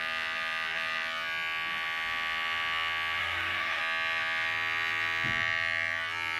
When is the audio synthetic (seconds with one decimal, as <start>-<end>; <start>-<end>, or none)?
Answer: 3.2-3.8